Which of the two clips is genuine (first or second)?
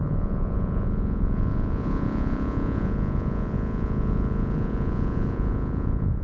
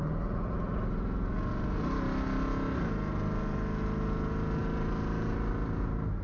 second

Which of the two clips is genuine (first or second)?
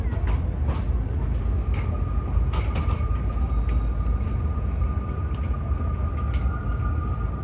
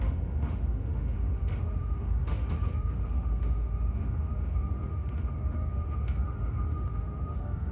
first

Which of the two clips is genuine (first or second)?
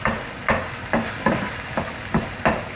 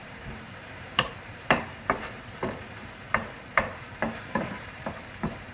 first